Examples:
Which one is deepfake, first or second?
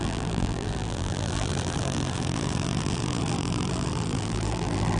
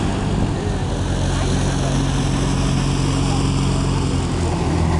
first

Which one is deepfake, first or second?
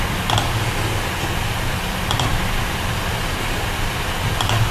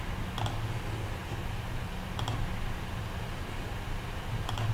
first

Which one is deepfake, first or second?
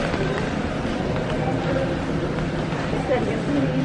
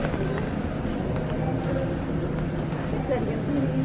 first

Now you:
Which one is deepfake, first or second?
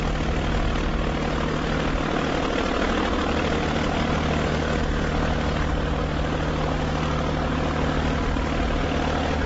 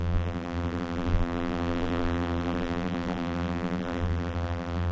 second